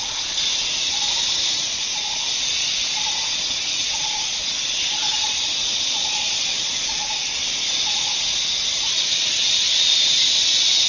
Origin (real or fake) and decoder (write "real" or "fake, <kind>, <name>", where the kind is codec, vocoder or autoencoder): fake, vocoder, Vocos